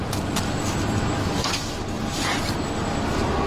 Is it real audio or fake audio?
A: real